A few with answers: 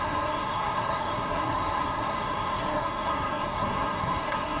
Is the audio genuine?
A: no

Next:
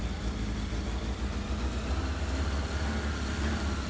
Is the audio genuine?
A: yes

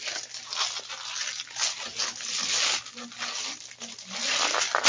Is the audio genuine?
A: yes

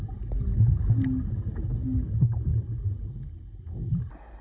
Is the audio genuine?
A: yes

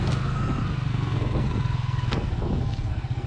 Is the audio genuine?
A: no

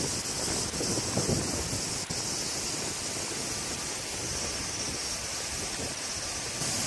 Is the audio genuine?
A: yes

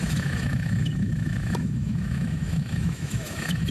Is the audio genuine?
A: no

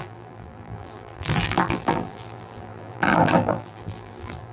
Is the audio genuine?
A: no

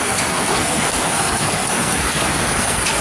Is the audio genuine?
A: no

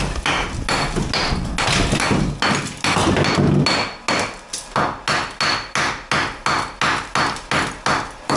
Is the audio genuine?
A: yes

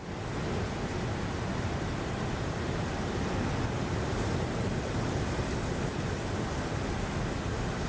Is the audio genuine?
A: yes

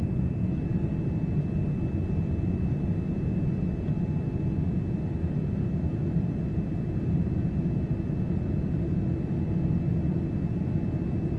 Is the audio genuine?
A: yes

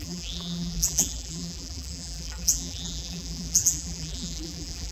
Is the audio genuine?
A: no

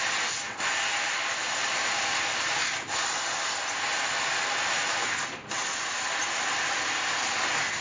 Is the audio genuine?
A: yes